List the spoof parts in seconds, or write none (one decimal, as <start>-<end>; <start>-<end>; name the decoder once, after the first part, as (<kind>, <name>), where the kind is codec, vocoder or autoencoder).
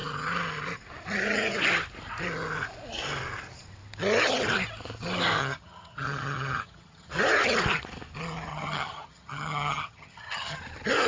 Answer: 5.4-7.1 (vocoder, HiFi-GAN); 8.5-10.6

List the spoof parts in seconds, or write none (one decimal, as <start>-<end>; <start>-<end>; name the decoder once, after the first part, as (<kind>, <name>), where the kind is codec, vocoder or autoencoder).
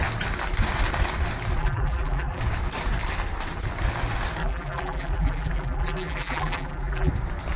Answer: 1.6-2.4 (vocoder, BigVGAN v2); 4.4-7.1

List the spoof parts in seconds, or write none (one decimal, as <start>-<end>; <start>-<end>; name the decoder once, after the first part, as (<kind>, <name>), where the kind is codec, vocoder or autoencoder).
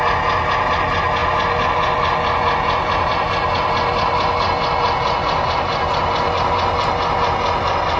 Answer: none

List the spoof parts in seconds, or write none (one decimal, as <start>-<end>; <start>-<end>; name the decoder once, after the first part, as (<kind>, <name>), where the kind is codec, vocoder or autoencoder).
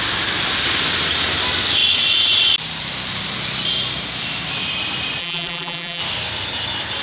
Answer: 5.2-6.0 (vocoder, BigVGAN v2)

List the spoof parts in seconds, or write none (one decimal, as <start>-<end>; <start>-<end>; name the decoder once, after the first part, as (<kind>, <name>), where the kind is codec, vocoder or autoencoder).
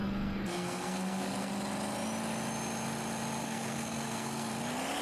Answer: 0.0-1.5 (codec, SNAC); 3.4-4.5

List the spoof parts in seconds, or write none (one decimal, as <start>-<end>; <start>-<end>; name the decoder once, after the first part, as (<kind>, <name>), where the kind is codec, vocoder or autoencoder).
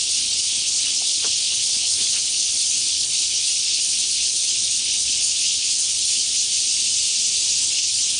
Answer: 0.0-6.2 (codec, HILCodec); 7.6-8.2